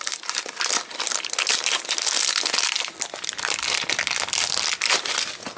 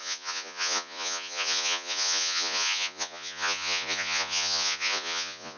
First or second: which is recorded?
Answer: first